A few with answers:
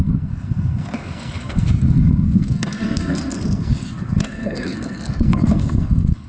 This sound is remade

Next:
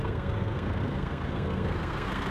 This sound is remade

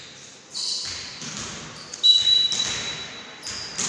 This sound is recorded